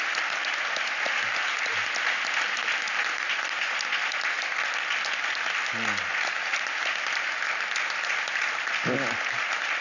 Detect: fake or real fake